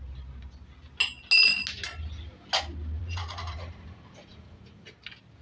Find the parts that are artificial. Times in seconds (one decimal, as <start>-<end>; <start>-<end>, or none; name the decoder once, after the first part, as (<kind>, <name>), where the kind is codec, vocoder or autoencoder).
3.0-4.9 (vocoder, Vocos)